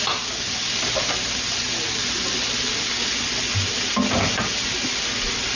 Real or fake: real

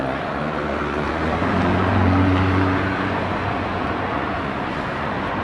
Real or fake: fake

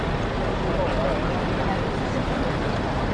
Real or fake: real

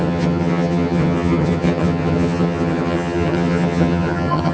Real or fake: fake